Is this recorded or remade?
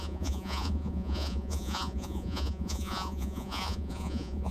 remade